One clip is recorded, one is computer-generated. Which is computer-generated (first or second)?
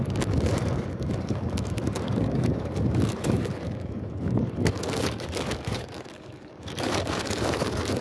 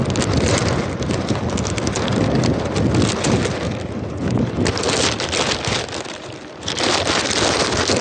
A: first